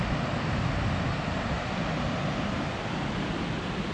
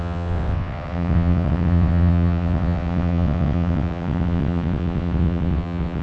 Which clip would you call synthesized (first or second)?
second